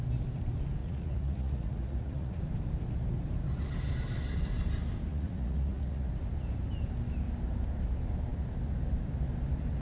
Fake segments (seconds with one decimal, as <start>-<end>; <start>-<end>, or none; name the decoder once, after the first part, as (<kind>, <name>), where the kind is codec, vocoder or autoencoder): 0.8-2.4 (vocoder, Vocos); 5.1-6.1